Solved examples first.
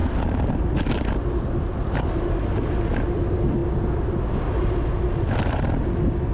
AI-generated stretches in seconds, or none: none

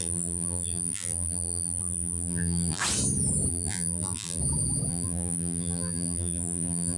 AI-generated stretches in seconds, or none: 0.0-2.8 (vocoder, BigVGAN v2); 3.5-4.4; 4.9-7.0

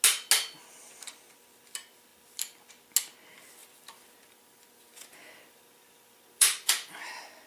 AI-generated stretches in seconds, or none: 2.1-2.7 (vocoder, BigVGAN v2); 3.6-6.7